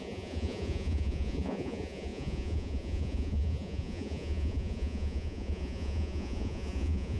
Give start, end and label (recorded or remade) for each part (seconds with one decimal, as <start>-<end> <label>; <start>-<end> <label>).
0.0-7.2 remade